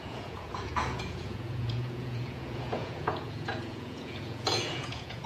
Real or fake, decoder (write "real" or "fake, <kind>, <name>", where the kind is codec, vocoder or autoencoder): fake, vocoder, Vocos